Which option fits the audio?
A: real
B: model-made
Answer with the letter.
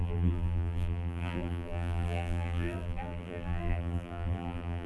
B